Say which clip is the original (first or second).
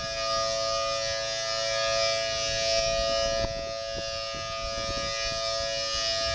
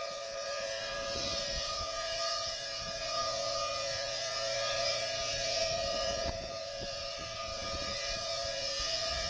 first